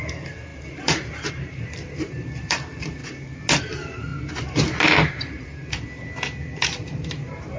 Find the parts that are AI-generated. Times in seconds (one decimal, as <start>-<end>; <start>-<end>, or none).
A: 0.0-3.0; 3.6-4.1; 5.1-5.6; 6.4-7.6